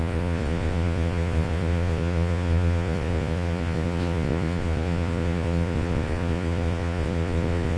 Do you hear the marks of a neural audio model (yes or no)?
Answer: yes